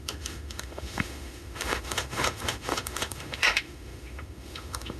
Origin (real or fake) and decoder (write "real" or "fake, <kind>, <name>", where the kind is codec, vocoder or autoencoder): fake, autoencoder, DAC-VAE